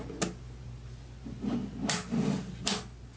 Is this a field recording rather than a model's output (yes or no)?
yes